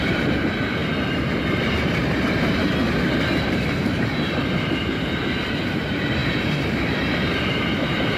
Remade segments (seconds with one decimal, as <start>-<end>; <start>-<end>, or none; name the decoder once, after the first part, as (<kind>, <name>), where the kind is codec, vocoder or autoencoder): 0.0-0.8 (vocoder, BigVGAN v2); 1.7-2.6; 3.3-8.2